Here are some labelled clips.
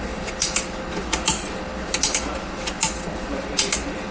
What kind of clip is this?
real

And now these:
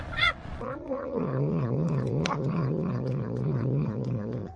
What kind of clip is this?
fake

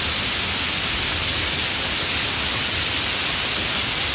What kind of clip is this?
real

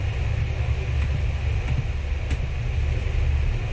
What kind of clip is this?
real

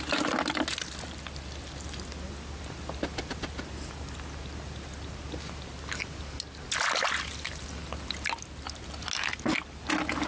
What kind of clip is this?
real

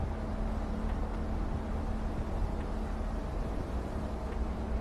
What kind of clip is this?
real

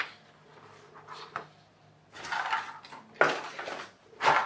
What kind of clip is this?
real